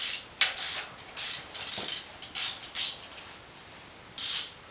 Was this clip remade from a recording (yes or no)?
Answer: no